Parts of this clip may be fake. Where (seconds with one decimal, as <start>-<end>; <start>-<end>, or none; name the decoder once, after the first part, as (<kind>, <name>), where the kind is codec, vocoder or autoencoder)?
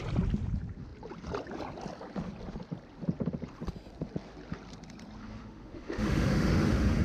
5.2-7.0 (autoencoder, DAC-VAE)